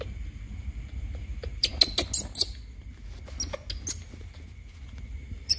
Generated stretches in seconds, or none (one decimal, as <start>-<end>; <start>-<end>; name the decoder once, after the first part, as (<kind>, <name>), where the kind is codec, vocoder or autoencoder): 0.0-1.7 (vocoder, BigVGAN v2); 5.1-5.6